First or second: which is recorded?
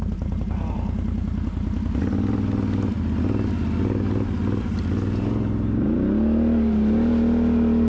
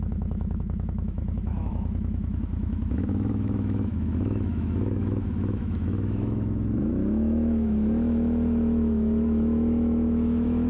first